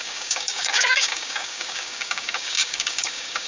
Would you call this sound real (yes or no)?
no